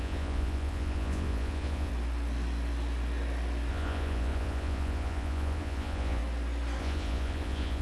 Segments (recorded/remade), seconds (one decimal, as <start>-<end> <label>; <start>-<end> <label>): 0.0-1.9 remade; 1.9-3.7 recorded; 3.7-6.2 remade; 6.2-6.8 recorded; 6.8-7.8 remade